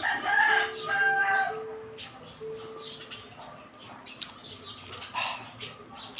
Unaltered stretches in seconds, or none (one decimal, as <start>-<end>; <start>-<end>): 0.0-6.2